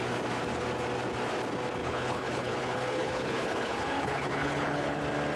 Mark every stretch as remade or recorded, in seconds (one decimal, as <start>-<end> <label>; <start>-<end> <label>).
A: 0.0-1.8 recorded; 1.8-5.0 remade; 5.0-5.4 recorded